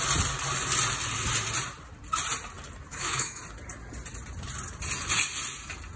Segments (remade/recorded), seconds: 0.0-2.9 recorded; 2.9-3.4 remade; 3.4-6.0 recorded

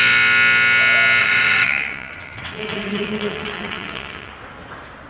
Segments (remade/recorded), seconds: 0.0-1.2 recorded; 1.2-4.3 remade; 4.3-5.1 recorded